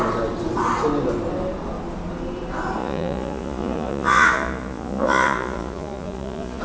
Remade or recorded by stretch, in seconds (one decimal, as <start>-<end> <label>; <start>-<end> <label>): 0.0-2.8 recorded; 2.8-6.6 remade